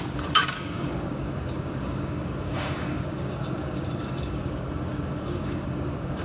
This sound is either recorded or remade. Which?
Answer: remade